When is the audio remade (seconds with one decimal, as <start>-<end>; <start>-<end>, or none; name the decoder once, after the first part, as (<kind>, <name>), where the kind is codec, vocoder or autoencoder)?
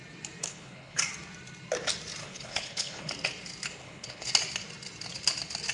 0.4-1.0 (codec, HILCodec); 2.2-3.1; 3.8-4.3